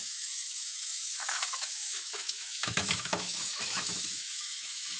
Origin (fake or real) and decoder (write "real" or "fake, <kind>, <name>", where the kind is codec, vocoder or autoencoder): fake, autoencoder, DAC-VAE